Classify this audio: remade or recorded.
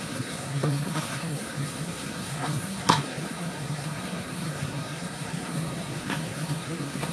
remade